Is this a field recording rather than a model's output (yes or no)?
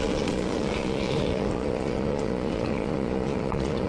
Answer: no